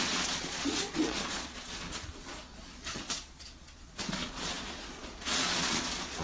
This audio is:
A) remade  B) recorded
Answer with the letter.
A